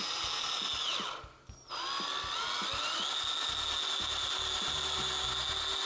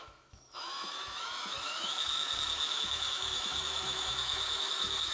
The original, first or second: first